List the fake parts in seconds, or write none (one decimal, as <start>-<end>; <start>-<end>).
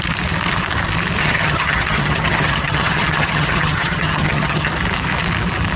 1.2-4.7